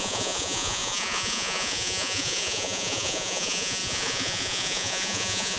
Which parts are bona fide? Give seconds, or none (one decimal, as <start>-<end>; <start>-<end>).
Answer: none